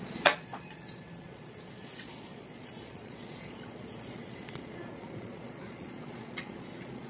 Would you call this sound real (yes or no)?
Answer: no